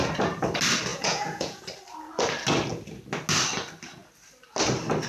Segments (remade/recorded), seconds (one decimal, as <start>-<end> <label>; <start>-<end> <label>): 0.0-0.9 recorded; 0.9-1.6 remade; 1.6-5.1 recorded